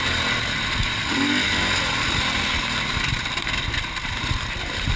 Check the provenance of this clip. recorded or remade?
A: recorded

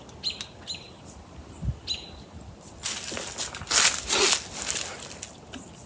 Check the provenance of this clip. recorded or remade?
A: recorded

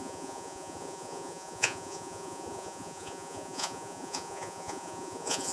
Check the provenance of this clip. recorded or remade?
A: remade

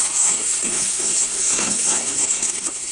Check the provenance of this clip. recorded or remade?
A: remade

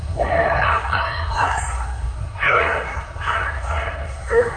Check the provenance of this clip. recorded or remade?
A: remade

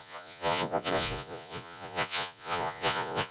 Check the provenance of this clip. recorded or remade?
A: remade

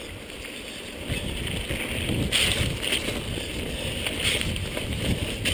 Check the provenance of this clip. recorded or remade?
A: recorded